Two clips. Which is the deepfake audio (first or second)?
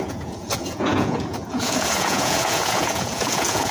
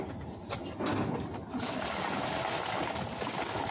first